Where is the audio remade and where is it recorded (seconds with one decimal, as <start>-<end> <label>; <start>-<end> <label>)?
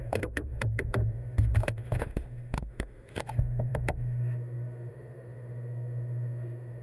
0.0-6.8 remade